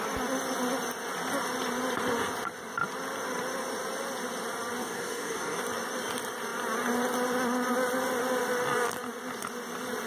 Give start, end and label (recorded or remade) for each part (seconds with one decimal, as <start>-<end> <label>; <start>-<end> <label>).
0.0-4.8 recorded; 4.8-5.6 remade; 5.6-10.1 recorded